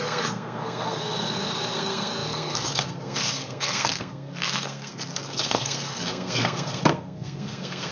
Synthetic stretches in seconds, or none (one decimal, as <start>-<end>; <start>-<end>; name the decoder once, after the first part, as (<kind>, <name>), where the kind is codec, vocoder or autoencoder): 0.0-7.9 (codec, SNAC)